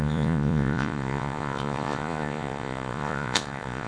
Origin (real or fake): fake